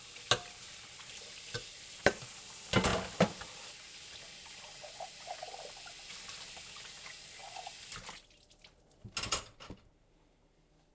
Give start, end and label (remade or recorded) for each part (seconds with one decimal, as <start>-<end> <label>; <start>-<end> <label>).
0.0-10.9 recorded